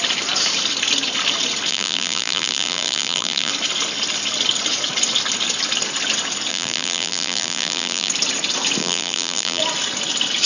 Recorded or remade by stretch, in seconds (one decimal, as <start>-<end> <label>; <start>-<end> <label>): 0.0-1.7 recorded; 1.7-3.5 remade; 3.5-6.5 recorded; 6.5-8.1 remade; 8.1-8.8 recorded; 8.8-9.6 remade; 9.6-10.5 recorded

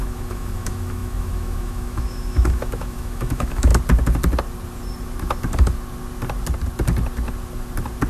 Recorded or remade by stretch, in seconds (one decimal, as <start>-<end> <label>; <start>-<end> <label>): 0.0-3.7 remade; 3.7-8.1 recorded

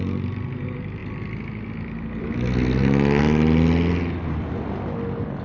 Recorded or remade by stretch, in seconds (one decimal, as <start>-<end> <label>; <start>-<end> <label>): 0.0-5.4 recorded

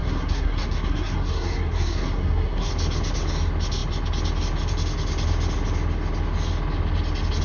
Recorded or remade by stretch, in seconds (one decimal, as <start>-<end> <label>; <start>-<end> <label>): 0.0-2.7 remade; 2.7-7.4 recorded

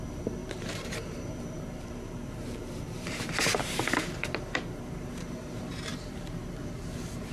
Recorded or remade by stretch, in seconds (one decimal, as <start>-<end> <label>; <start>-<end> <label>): 0.0-7.3 remade

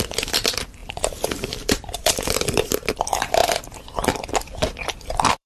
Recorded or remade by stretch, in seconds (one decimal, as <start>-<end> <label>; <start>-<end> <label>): 0.0-5.5 remade